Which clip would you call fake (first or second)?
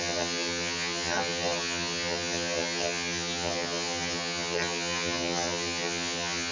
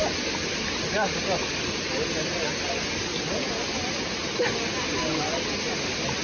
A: first